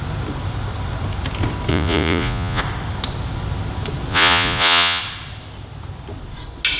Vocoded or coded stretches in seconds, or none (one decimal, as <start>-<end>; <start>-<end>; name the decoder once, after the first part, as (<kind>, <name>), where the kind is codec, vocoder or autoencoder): 1.7-2.6 (vocoder, Vocos); 4.1-5.0

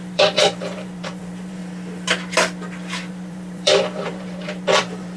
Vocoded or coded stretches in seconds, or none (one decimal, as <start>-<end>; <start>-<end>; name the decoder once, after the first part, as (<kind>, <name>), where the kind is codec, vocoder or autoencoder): 0.0-1.6 (vocoder, BigVGAN v2); 3.1-5.2

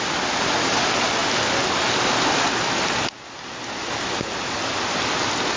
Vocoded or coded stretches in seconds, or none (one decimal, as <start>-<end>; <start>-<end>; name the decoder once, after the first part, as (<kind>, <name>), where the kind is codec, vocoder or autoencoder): 1.2-4.1 (vocoder, BigVGAN v2)

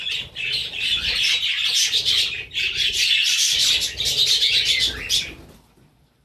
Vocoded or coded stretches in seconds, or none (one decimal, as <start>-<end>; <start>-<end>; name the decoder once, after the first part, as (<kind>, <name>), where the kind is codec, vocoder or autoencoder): 0.6-3.5 (vocoder, BigVGAN v2)

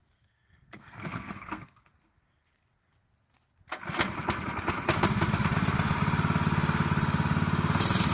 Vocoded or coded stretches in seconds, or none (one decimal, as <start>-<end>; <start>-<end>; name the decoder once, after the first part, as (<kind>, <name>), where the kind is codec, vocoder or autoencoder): 0.0-1.9 (codec, SNAC)